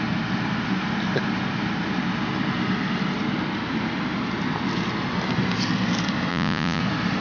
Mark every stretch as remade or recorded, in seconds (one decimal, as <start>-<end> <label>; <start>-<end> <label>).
0.0-6.3 recorded; 6.3-6.8 remade; 6.8-7.2 recorded